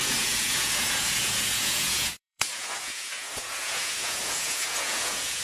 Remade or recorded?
remade